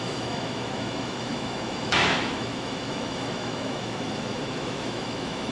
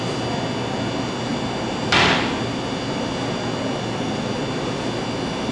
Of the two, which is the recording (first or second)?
second